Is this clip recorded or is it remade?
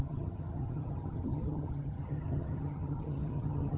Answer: remade